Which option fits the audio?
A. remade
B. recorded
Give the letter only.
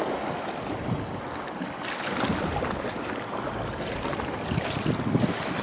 B